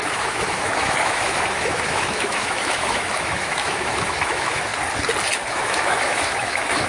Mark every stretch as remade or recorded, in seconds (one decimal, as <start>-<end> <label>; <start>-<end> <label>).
0.0-4.7 remade; 4.7-5.5 recorded; 5.5-6.9 remade